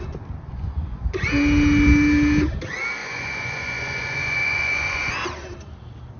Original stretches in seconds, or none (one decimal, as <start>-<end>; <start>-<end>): 0.0-0.5; 1.2-3.0; 5.1-6.2

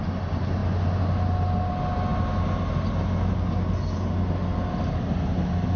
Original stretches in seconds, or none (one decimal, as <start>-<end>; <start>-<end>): 0.0-5.8

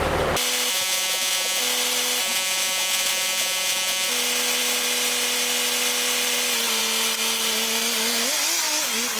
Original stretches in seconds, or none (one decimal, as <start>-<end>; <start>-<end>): 0.0-0.7; 1.6-2.2; 4.1-9.2

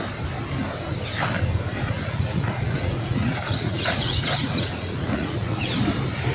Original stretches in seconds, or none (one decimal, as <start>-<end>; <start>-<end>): 0.0-1.9; 5.7-6.3

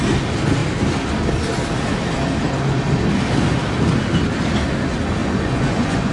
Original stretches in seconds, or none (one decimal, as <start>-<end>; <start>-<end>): 0.0-5.2

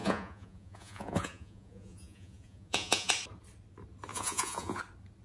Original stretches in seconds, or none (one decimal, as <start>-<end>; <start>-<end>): 3.1-4.1; 4.8-5.2

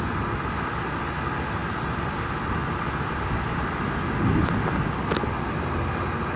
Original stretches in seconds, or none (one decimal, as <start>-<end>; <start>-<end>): 0.0-6.4